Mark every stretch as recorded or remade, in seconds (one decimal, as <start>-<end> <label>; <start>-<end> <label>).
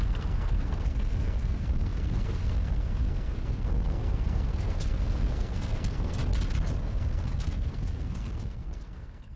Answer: 0.0-6.2 remade; 6.2-6.8 recorded; 6.8-9.4 remade